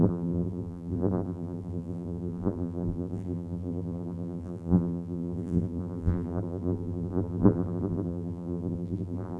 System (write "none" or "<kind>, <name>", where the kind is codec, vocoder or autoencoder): vocoder, BigVGAN v2